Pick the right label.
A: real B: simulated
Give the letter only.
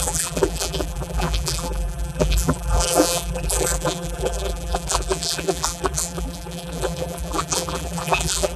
B